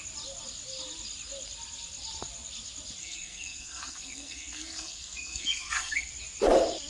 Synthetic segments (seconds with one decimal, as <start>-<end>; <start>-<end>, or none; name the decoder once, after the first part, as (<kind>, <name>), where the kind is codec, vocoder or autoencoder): 3.0-6.1 (codec, SNAC)